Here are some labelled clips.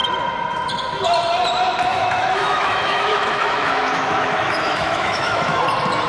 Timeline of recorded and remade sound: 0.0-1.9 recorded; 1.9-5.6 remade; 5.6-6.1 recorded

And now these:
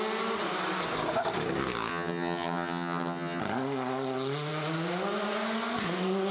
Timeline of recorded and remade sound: 0.0-1.9 recorded; 1.9-3.4 remade; 3.4-6.3 recorded

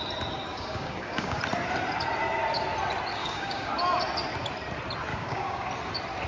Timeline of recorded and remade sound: 0.0-0.5 recorded; 0.5-1.4 remade; 1.4-3.2 recorded; 3.2-3.7 remade; 3.7-5.1 recorded; 5.1-5.7 remade; 5.7-6.3 recorded

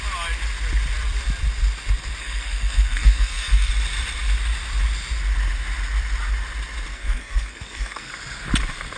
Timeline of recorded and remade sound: 0.0-2.2 recorded; 2.2-3.7 remade; 3.7-6.9 recorded; 6.9-8.1 remade; 8.1-9.0 recorded